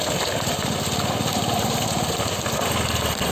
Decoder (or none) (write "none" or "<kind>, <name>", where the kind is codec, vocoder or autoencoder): none